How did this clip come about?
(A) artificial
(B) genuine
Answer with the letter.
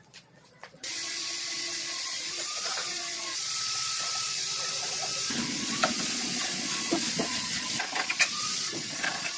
A